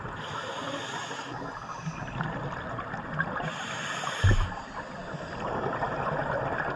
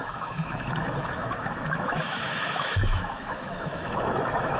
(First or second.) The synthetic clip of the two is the second